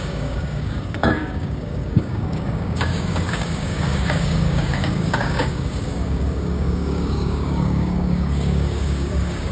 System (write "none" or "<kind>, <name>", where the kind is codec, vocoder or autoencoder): codec, DAC